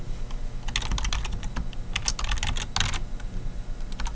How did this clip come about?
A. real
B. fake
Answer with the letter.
A